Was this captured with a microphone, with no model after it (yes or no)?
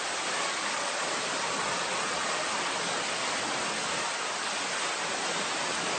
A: yes